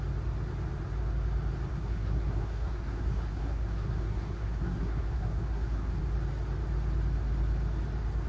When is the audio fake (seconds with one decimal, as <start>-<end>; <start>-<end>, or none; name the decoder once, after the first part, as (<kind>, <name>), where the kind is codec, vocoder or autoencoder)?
1.7-6.0 (codec, SNAC)